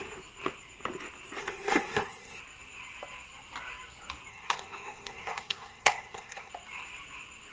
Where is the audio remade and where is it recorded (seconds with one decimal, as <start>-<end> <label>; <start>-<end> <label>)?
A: 0.0-1.4 recorded; 1.4-2.4 remade; 2.4-4.3 recorded; 4.3-6.5 remade; 6.5-7.5 recorded